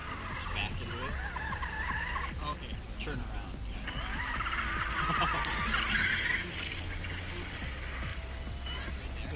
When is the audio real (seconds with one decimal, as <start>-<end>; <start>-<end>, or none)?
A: 0.0-2.8; 6.6-9.4